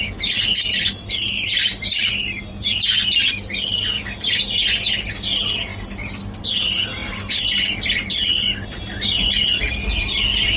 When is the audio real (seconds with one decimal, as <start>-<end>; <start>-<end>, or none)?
0.0-10.6